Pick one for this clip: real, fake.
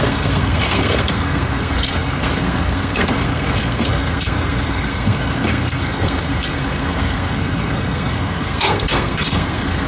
fake